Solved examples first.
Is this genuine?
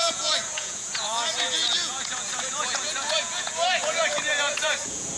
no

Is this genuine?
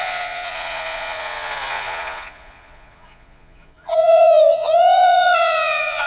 no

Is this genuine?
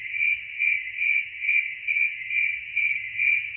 no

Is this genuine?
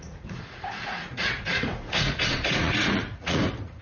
no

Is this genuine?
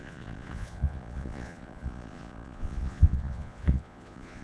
no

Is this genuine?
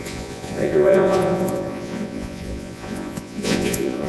no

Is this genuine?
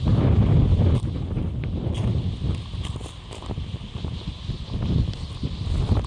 yes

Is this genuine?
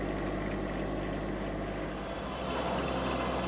yes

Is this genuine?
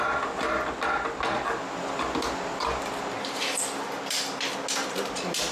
yes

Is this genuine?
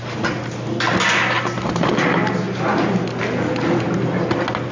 yes